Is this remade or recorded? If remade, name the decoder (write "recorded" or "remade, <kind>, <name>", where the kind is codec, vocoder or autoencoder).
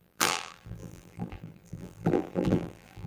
remade, vocoder, BigVGAN v2